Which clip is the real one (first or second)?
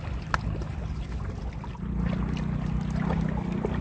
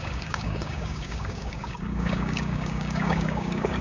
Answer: first